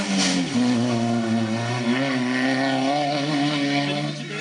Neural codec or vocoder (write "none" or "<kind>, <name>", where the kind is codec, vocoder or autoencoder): none